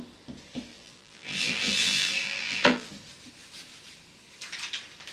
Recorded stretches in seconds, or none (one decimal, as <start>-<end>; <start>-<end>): 0.0-0.7; 2.9-5.1